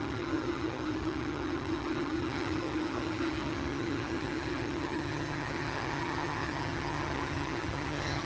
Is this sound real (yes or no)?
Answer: no